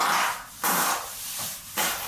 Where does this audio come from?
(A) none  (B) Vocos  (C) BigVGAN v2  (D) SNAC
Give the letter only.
C